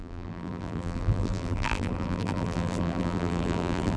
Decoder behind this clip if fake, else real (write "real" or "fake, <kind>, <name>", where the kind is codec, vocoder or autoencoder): fake, vocoder, BigVGAN v2